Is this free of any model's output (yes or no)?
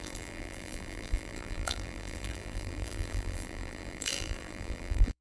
no